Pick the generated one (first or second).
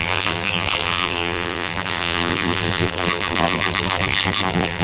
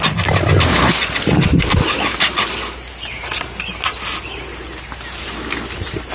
first